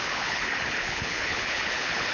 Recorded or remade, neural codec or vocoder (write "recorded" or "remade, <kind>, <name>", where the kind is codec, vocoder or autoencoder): remade, codec, HILCodec